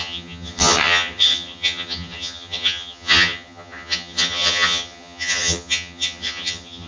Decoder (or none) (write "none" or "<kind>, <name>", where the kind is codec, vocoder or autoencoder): vocoder, HiFi-GAN